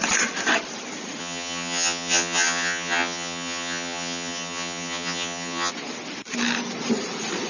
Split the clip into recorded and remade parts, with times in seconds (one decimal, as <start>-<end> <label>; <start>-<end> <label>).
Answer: 0.0-1.2 recorded; 1.2-5.7 remade; 5.7-7.5 recorded